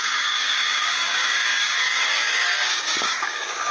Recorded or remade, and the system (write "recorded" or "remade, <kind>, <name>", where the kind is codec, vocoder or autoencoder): remade, codec, DAC